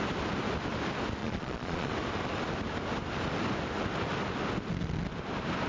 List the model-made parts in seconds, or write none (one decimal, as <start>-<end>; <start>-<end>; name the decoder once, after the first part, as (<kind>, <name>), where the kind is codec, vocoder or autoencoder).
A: 1.2-1.9 (vocoder, Vocos)